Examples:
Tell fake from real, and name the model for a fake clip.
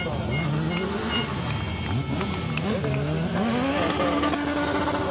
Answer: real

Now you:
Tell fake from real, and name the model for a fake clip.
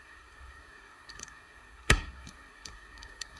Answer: fake, codec, SNAC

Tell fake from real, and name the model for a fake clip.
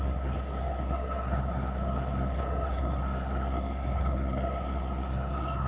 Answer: fake, codec, SNAC